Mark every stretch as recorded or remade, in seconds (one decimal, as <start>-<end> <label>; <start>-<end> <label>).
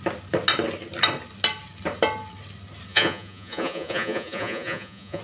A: 0.0-2.9 recorded; 2.9-5.2 remade